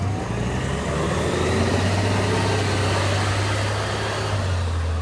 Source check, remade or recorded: recorded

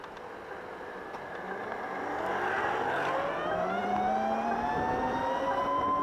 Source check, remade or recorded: recorded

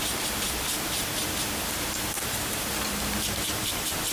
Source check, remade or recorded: remade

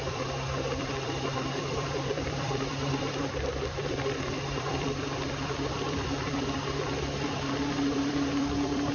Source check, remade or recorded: remade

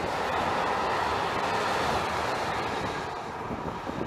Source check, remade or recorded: recorded